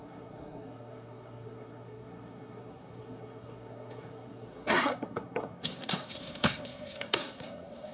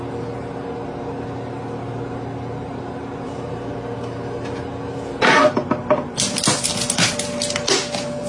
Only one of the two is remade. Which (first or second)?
first